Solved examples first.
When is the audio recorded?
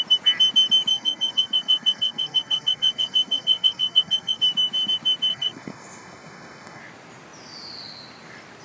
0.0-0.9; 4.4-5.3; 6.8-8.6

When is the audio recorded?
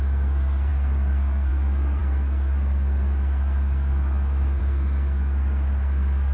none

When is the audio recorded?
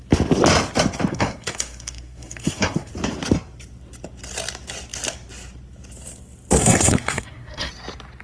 0.0-1.1; 2.9-6.6; 7.7-8.2